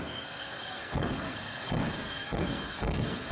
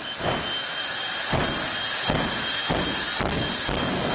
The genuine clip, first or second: second